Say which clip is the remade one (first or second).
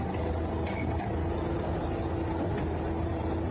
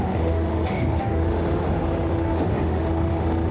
second